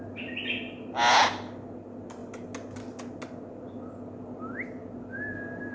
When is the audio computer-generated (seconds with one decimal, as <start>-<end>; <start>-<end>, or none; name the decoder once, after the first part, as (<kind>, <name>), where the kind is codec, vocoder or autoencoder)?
none